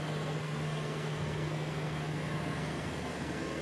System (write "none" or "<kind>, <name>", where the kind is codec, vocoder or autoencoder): codec, SNAC